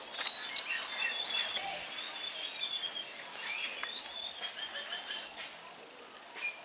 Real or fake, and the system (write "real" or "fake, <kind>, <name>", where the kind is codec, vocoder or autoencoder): real